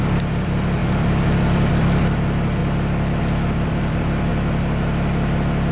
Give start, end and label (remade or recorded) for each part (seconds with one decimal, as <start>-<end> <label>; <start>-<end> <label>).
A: 0.0-2.6 remade; 2.6-3.2 recorded; 3.2-4.3 remade; 4.3-5.7 recorded